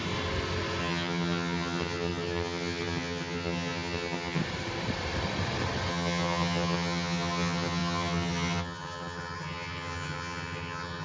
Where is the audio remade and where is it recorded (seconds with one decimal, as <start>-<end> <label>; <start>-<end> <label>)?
0.0-0.8 recorded; 0.8-4.4 remade; 4.4-5.9 recorded; 5.9-11.0 remade

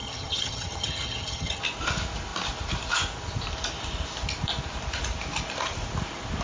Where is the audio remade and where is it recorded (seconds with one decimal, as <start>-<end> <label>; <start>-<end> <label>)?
0.0-1.6 remade; 1.6-6.4 recorded